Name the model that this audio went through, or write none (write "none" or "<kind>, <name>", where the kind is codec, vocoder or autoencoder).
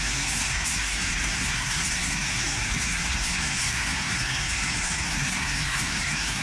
codec, SNAC